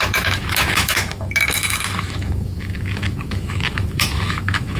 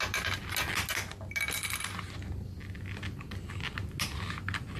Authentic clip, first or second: second